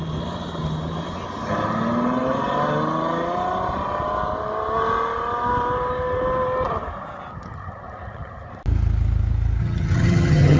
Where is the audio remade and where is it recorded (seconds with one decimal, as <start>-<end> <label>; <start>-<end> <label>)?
0.0-7.3 recorded; 7.3-8.5 remade; 8.5-9.6 recorded; 9.6-10.6 remade